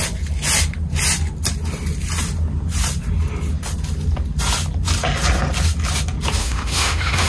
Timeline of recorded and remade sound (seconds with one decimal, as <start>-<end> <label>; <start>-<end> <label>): 0.0-6.4 recorded; 6.4-7.3 remade